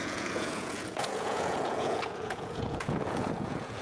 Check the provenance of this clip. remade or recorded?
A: remade